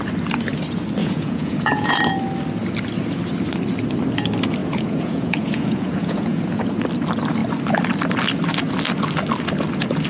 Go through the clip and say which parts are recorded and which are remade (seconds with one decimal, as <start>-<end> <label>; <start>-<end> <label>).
0.0-1.0 recorded; 1.0-2.0 remade; 2.0-4.6 recorded; 4.6-6.6 remade; 6.6-10.1 recorded

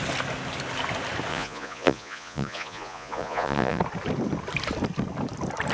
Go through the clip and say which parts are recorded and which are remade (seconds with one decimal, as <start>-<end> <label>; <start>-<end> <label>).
0.0-1.3 recorded; 1.3-3.8 remade; 3.8-5.7 recorded